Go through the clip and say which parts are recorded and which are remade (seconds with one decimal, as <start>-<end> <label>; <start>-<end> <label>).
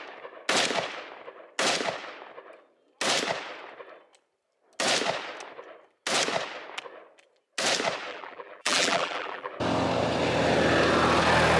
0.0-8.1 recorded; 8.1-9.5 remade; 9.5-11.6 recorded